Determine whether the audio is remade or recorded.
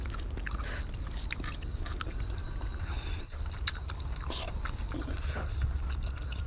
remade